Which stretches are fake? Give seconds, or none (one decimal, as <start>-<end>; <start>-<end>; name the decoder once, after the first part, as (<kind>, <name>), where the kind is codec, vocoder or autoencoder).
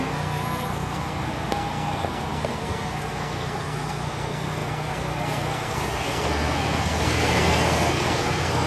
0.0-8.7 (codec, SNAC)